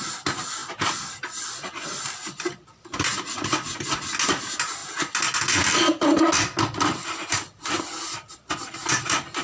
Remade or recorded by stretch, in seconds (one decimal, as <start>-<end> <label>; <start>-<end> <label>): 0.0-9.4 recorded